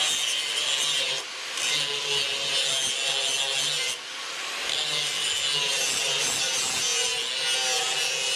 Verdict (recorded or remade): recorded